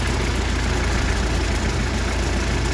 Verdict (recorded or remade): recorded